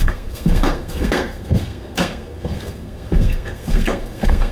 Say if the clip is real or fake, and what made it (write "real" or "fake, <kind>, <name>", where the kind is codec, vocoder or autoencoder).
fake, codec, SNAC